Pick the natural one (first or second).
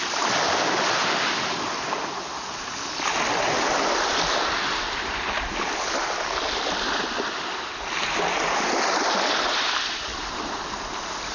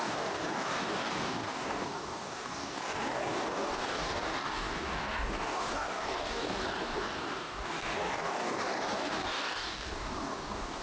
first